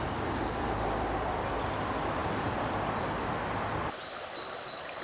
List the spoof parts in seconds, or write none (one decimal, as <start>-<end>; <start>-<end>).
none